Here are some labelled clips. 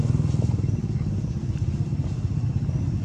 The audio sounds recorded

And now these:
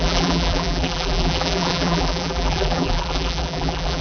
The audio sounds remade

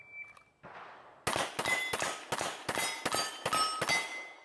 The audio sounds recorded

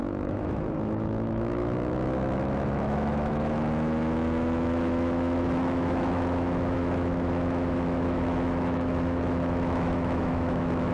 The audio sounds remade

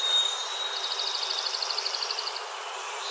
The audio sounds remade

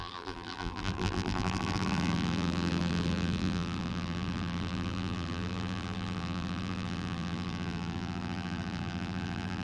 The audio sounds remade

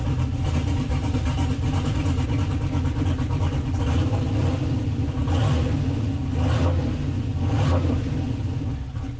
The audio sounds recorded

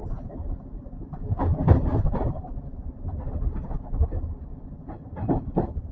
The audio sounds recorded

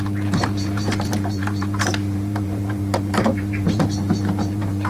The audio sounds remade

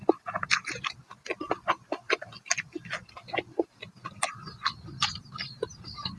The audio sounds recorded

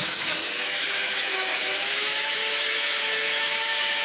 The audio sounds remade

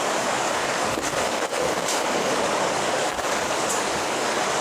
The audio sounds remade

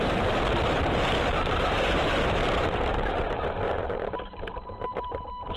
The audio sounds remade